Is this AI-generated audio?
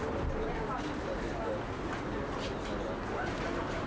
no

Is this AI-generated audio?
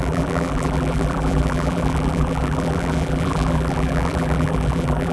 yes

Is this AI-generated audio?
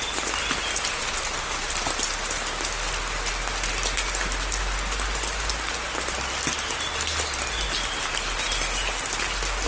no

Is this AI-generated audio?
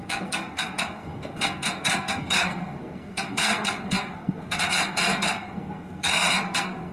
yes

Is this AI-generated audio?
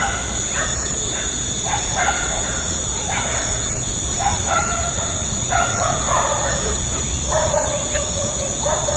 yes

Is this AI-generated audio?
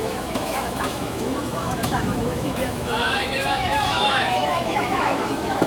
yes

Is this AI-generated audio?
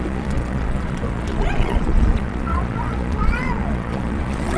yes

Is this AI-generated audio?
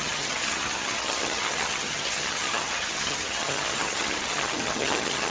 yes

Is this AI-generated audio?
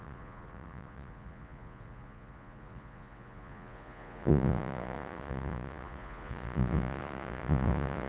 yes